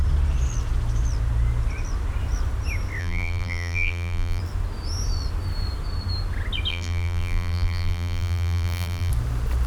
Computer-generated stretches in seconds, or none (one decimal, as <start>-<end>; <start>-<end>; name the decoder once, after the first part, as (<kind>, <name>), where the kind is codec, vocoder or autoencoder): 3.0-4.4 (vocoder, BigVGAN v2); 6.7-9.1